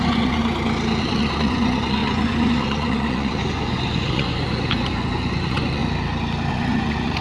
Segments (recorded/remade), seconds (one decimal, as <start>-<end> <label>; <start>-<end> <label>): 0.0-0.4 remade; 0.4-1.0 recorded; 1.0-5.8 remade; 5.8-6.5 recorded; 6.5-7.2 remade